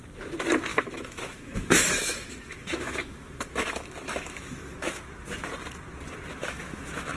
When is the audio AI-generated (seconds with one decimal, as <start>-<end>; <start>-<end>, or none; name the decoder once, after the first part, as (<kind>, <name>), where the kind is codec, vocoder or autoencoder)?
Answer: 0.7-5.0 (autoencoder, DAC-VAE); 6.4-7.2